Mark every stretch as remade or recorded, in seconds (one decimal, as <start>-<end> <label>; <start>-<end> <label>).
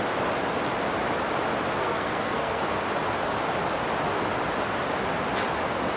0.0-1.8 recorded; 1.8-2.7 remade; 2.7-6.0 recorded